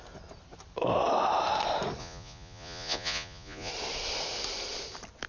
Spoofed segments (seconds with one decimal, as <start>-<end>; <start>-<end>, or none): 2.0-3.7